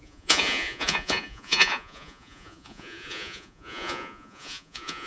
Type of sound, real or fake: fake